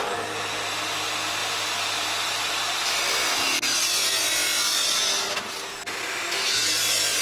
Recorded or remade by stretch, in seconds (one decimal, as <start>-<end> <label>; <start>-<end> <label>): 0.0-1.4 recorded; 1.4-5.7 remade; 5.7-7.2 recorded